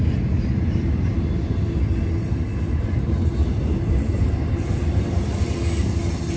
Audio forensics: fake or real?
real